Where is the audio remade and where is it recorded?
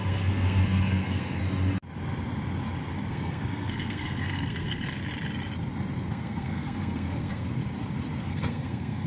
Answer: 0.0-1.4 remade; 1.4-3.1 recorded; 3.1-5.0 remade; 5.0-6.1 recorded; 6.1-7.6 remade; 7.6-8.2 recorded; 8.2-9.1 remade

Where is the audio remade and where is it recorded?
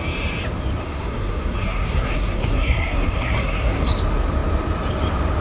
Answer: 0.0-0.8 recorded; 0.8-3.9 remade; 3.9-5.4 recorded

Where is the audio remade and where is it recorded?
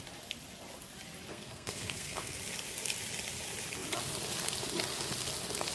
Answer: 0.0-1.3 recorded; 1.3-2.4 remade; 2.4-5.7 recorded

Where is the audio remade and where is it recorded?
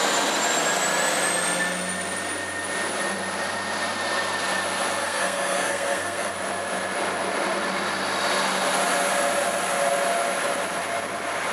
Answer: 0.0-5.0 recorded; 5.0-6.3 remade; 6.3-11.5 recorded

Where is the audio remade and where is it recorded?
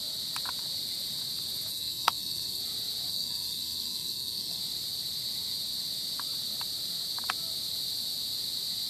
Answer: 0.0-1.7 recorded; 1.7-2.6 remade; 2.6-3.1 recorded; 3.1-4.6 remade; 4.6-8.9 recorded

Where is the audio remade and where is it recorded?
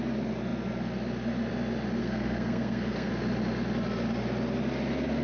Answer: 0.0-2.0 recorded; 2.0-3.1 remade; 3.1-5.2 recorded